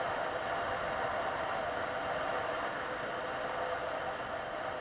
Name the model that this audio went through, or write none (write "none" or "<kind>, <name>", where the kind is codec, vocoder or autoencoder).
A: none